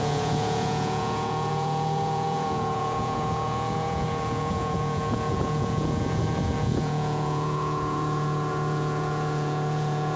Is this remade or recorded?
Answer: remade